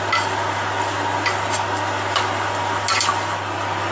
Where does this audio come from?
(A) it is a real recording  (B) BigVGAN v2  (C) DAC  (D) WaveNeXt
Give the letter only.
A